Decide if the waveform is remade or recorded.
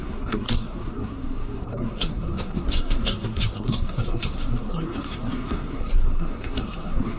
remade